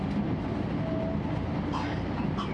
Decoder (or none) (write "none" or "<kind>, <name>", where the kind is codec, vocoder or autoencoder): none